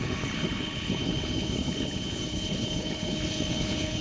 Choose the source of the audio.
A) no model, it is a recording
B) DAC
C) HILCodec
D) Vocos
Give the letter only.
C